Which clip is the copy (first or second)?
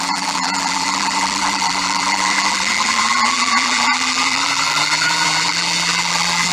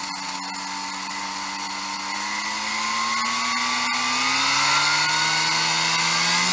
first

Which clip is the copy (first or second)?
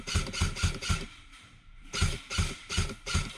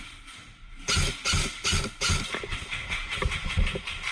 first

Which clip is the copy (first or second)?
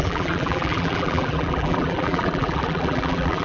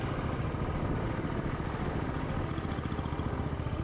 first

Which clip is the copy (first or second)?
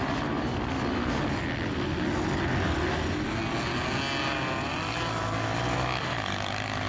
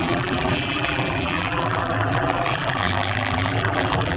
second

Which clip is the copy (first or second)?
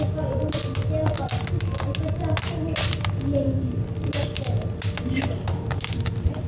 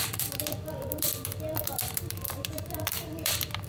second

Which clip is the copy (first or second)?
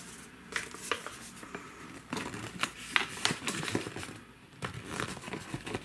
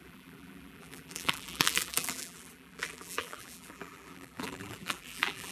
second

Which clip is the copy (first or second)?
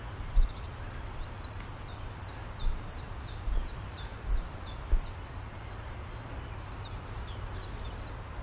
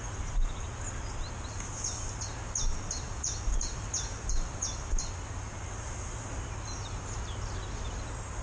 first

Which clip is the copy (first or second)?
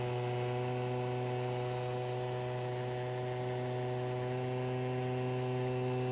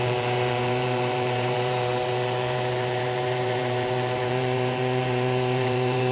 second